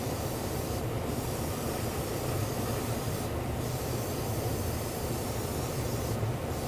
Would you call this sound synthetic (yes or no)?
yes